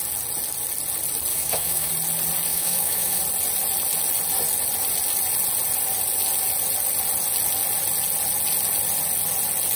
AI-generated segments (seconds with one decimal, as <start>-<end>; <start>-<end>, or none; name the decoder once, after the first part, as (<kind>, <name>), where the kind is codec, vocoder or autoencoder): 1.3-1.9 (autoencoder, DAC-VAE); 2.5-3.2